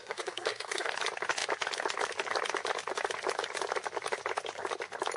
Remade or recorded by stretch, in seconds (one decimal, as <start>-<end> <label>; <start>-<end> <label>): 0.0-0.9 remade; 0.9-5.2 recorded